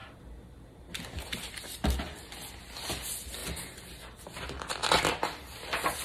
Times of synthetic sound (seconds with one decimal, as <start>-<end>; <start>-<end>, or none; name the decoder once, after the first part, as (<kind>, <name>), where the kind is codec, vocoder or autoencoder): none